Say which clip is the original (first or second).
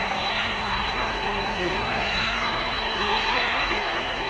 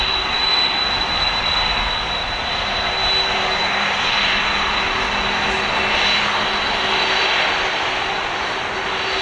second